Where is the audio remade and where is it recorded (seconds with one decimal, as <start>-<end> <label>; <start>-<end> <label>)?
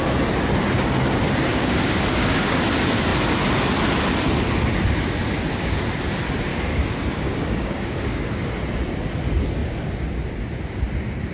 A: 0.0-1.5 recorded; 1.5-2.7 remade; 2.7-6.5 recorded; 6.5-8.5 remade; 8.5-11.3 recorded